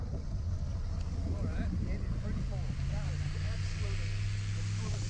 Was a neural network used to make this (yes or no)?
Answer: no